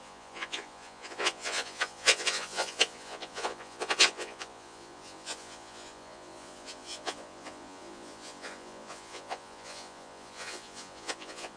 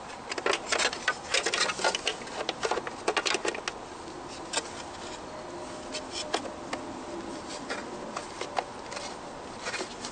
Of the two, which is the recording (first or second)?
second